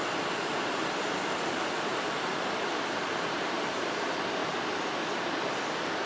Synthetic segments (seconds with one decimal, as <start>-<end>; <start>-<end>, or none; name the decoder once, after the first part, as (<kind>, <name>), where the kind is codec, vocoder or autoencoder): 1.9-3.7 (vocoder, BigVGAN v2)